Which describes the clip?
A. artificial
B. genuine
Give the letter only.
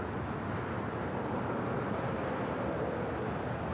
B